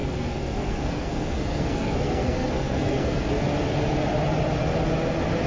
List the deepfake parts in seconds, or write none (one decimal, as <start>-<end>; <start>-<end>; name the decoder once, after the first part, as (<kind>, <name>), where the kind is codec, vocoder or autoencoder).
0.0-3.3 (codec, SNAC)